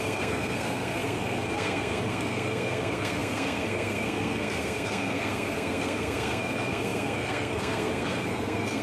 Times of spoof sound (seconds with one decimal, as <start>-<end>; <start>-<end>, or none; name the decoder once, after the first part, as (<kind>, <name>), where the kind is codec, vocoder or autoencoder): 0.0-8.8 (codec, SNAC)